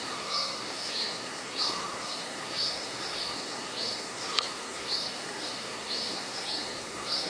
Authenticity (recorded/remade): remade